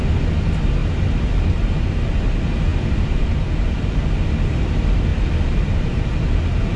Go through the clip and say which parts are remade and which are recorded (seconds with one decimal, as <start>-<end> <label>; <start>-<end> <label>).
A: 0.0-0.8 recorded; 0.8-2.2 remade; 2.2-5.1 recorded; 5.1-6.8 remade